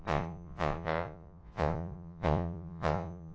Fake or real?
fake